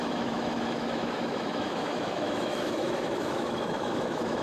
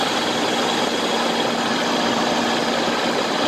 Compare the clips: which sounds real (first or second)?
second